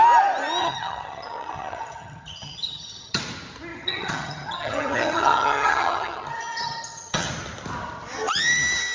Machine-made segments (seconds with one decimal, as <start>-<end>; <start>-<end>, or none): 0.6-3.2; 3.7-7.3